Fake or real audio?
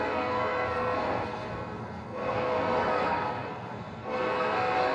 fake